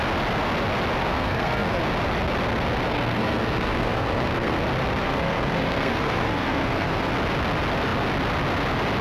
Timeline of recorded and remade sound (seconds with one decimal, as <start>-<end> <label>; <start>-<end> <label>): 0.0-1.0 recorded; 1.0-1.8 remade; 1.8-2.9 recorded; 2.9-4.6 remade; 4.6-5.0 recorded; 5.0-7.1 remade; 7.1-9.0 recorded

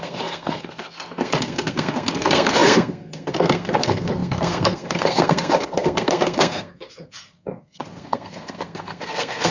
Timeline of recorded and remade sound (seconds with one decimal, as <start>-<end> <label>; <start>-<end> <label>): 0.0-9.5 remade

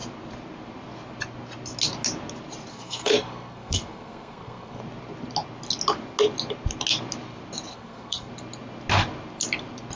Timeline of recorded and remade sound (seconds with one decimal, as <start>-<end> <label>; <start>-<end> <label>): 0.0-2.7 recorded; 2.7-4.8 remade; 4.8-7.7 recorded; 7.7-8.3 remade; 8.3-10.0 recorded

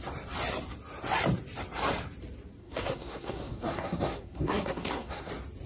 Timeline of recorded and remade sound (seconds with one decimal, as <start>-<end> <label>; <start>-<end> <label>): 0.0-2.6 recorded; 2.6-5.3 remade; 5.3-5.7 recorded

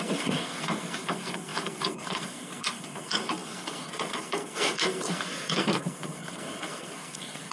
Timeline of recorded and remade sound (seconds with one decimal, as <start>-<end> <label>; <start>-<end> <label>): 0.0-7.5 remade

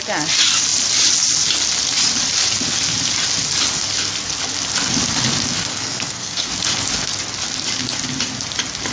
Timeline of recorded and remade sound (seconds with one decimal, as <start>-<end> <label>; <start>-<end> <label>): 0.0-5.7 recorded; 5.7-6.5 remade; 6.5-8.9 recorded

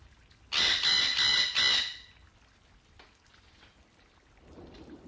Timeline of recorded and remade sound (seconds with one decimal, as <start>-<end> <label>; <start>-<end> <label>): 0.0-5.1 recorded

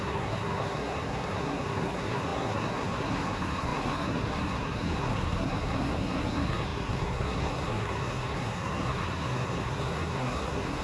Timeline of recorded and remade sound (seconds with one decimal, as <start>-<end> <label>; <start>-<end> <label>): 0.0-10.8 remade